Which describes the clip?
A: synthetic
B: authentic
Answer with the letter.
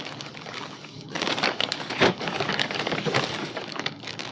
A